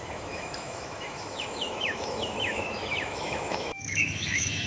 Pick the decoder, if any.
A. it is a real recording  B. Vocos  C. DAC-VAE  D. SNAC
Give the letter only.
C